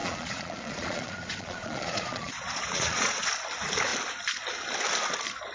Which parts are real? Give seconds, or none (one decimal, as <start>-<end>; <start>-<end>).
3.3-5.5